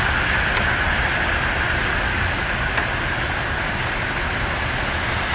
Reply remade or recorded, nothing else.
recorded